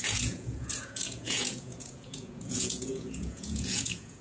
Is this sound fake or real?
fake